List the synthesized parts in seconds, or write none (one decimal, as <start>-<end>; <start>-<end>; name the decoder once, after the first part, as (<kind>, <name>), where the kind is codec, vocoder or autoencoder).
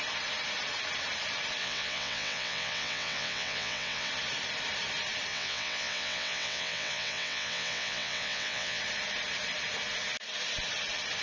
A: 1.6-4.1 (vocoder, WaveNeXt); 5.3-8.8